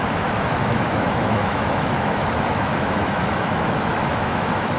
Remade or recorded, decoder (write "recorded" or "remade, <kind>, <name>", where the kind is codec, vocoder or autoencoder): remade, autoencoder, DAC-VAE